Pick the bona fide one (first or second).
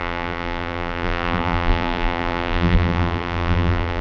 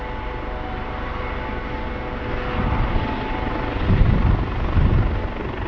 second